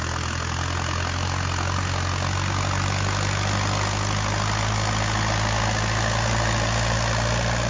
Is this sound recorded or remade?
recorded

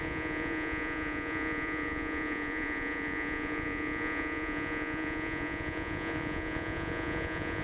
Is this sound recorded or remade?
remade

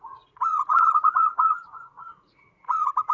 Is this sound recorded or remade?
remade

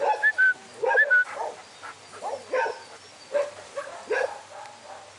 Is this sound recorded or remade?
recorded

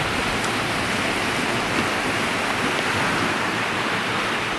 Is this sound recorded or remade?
recorded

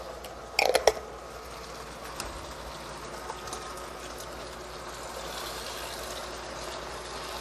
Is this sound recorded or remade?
recorded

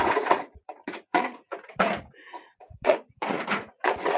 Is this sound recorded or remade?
remade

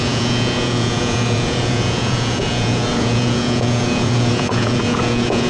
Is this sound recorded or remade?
remade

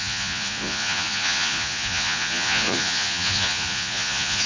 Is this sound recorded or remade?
remade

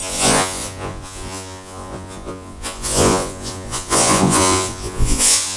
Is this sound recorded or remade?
remade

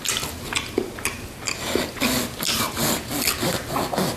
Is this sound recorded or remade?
recorded